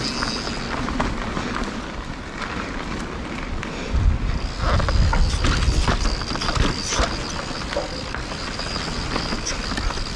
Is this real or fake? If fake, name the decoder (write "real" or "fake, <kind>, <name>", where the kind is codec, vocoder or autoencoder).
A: real